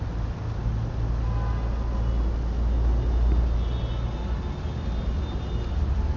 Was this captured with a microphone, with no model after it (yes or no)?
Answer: yes